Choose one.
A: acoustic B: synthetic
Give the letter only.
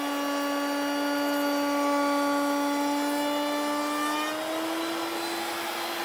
A